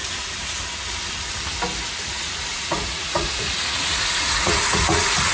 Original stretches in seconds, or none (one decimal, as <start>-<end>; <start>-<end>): 0.0-2.0